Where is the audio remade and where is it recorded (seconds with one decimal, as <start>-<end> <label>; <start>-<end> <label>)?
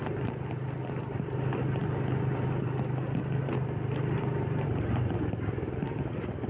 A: 0.0-6.5 recorded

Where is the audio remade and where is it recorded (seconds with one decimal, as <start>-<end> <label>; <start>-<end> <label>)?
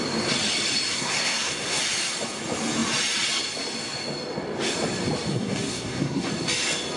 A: 0.0-0.9 recorded; 0.9-1.8 remade; 1.8-5.3 recorded; 5.3-6.3 remade; 6.3-7.0 recorded